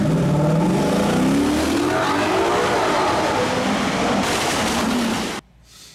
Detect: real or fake real